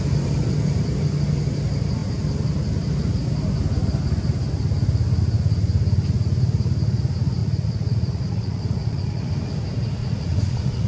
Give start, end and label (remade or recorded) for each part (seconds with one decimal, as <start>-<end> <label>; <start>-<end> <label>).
0.0-7.4 recorded; 7.4-9.3 remade; 9.3-10.0 recorded; 10.0-10.9 remade